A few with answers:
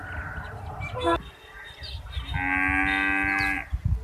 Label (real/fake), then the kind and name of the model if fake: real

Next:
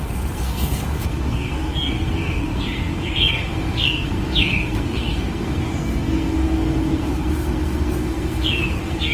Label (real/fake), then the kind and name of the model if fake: fake, codec, SNAC